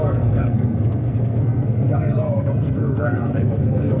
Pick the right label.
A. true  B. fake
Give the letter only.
B